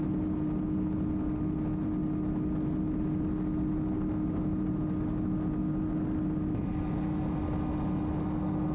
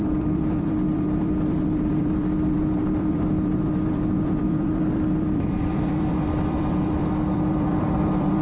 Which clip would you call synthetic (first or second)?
second